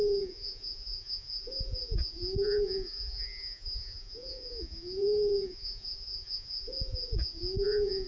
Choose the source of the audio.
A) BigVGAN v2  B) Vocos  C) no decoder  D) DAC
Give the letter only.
B